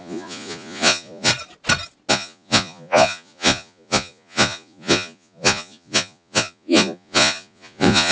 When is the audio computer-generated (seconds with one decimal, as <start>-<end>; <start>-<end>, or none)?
0.0-1.3; 2.1-8.1

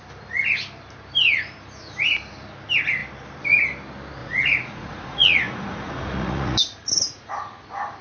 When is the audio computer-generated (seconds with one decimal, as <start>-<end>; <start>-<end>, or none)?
4.2-7.3

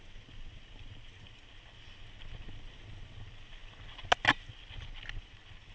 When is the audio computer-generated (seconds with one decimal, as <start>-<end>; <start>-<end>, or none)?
none

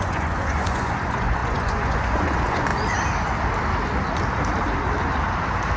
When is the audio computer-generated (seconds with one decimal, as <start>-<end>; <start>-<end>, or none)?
0.0-2.7

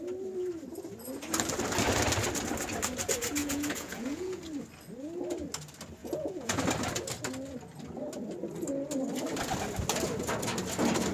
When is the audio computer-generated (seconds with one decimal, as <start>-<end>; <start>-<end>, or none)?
3.4-4.4; 6.0-6.6

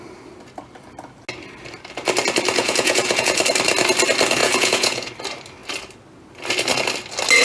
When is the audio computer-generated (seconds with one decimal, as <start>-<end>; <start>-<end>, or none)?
2.6-3.4; 4.4-5.1

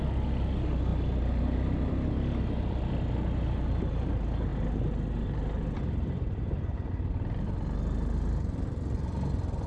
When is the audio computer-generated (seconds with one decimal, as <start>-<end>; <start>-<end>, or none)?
none

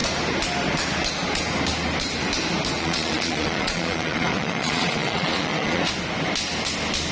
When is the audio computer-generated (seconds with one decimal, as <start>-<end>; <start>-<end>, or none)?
2.8-5.8